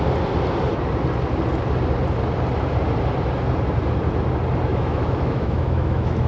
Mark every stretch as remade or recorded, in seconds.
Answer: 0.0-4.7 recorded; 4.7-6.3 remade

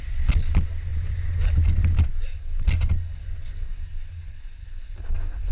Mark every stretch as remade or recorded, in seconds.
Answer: 0.0-5.5 recorded